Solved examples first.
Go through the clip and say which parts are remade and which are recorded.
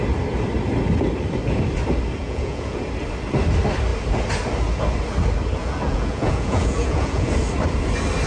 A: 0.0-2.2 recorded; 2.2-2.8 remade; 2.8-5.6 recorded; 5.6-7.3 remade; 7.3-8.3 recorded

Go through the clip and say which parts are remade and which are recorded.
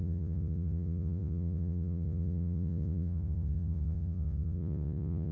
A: 0.0-5.3 remade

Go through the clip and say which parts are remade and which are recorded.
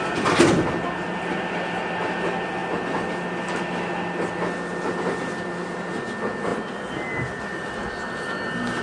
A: 0.0-8.8 recorded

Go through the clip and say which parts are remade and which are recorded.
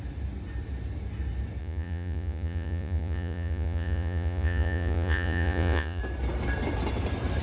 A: 0.0-1.6 recorded; 1.6-6.0 remade; 6.0-7.4 recorded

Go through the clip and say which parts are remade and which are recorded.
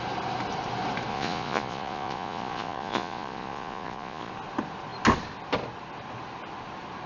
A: 0.0-1.1 recorded; 1.1-4.3 remade; 4.3-7.1 recorded